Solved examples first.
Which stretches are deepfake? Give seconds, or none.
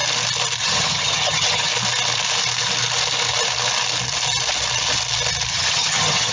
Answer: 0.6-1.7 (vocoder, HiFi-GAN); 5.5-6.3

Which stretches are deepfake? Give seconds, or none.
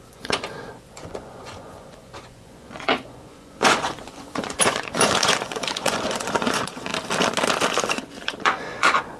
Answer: 0.0-6.9 (vocoder, Vocos); 7.7-9.2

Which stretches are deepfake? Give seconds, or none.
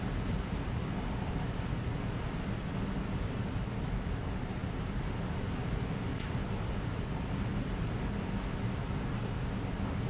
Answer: none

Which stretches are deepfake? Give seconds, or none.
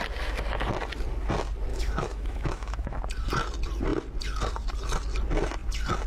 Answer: 1.7-3.0 (autoencoder, DAC-VAE)